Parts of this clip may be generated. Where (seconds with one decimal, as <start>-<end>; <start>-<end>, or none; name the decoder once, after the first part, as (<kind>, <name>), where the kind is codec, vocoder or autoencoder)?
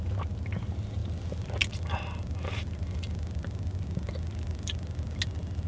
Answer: none